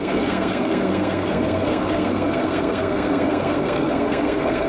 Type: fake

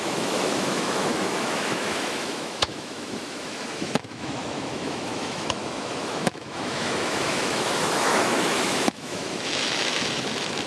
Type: fake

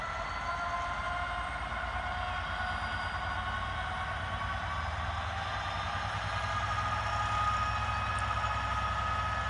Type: real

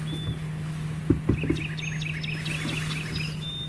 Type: real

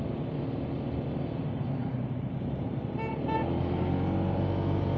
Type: real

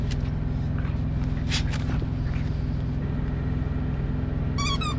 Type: real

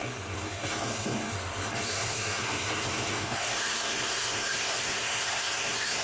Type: fake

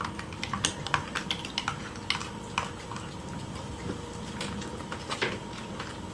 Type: real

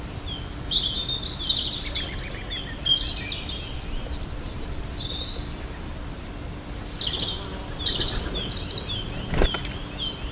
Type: real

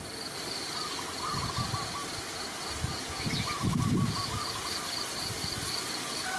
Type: real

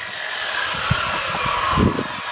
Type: fake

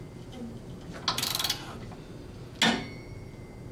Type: real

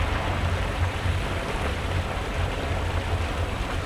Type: real